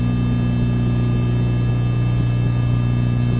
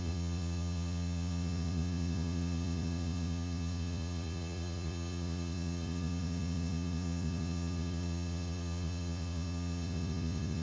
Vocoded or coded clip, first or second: second